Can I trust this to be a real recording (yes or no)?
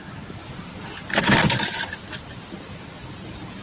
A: yes